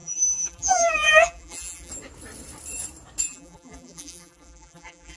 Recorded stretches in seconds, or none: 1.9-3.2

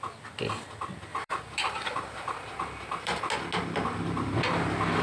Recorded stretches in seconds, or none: 0.0-1.1; 3.3-5.0

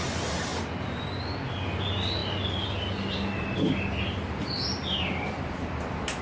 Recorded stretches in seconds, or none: 0.0-6.2

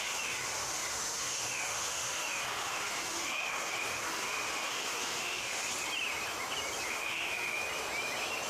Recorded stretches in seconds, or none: 5.6-6.9; 7.6-8.5